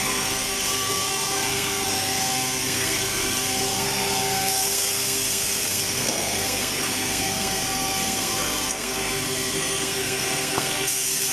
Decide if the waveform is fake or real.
fake